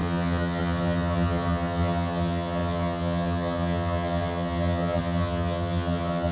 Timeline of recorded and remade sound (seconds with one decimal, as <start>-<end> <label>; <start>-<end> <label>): 0.0-6.3 remade